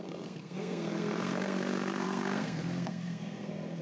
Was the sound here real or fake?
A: fake